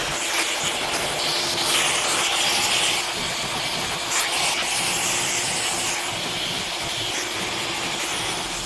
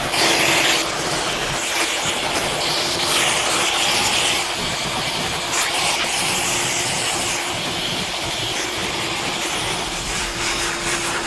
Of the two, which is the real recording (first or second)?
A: first